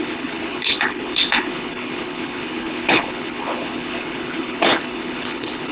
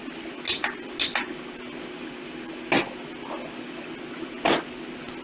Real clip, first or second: second